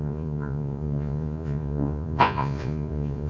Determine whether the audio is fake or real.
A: fake